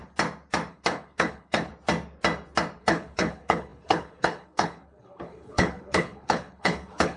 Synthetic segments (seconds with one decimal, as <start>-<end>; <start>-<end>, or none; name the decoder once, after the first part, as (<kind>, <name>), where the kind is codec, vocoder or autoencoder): 0.7-1.7 (codec, HILCodec); 2.8-7.2